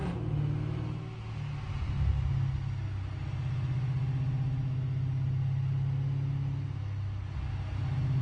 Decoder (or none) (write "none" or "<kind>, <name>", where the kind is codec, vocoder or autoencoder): none